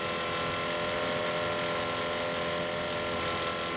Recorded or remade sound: recorded